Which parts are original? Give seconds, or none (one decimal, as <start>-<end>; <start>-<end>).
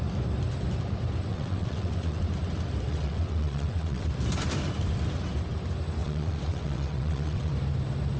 0.0-1.3; 2.2-2.9; 4.1-6.0; 7.5-8.2